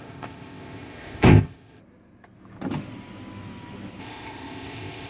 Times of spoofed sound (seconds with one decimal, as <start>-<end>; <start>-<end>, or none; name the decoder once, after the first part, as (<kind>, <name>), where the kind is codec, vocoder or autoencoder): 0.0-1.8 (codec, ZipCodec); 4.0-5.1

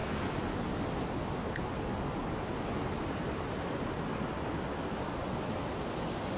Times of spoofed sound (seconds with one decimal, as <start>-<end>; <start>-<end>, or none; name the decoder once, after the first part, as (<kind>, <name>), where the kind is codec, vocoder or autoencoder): none

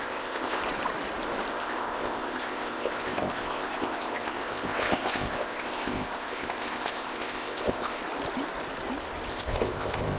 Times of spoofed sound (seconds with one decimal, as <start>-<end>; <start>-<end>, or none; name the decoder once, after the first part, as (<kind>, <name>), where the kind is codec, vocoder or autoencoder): 0.0-0.6 (codec, ZipCodec); 1.5-8.0; 9.3-10.2